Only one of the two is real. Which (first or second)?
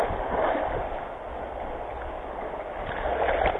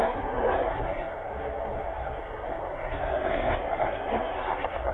first